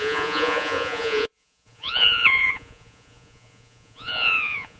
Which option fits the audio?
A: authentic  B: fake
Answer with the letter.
B